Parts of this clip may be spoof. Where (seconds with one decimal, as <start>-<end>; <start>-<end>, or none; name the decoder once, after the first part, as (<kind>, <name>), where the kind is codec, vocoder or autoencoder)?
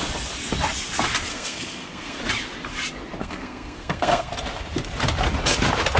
1.3-2.2 (codec, SNAC); 3.2-4.3